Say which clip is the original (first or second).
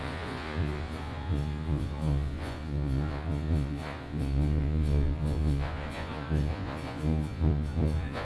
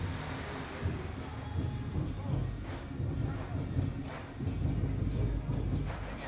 second